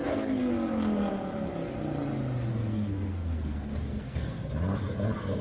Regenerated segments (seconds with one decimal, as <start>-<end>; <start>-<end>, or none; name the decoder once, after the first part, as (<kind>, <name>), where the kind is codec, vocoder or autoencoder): 0.0-0.5 (codec, SNAC); 2.5-4.5